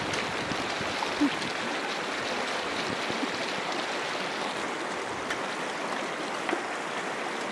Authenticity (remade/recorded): recorded